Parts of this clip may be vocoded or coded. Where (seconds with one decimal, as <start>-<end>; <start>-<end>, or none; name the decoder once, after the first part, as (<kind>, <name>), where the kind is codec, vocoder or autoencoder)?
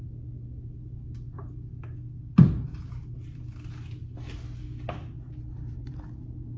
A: none